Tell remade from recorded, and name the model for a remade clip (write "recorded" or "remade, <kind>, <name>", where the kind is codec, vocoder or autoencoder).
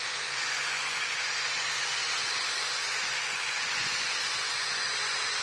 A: remade, vocoder, Vocos